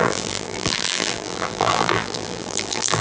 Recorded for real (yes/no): no